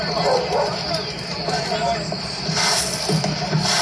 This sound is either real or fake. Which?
real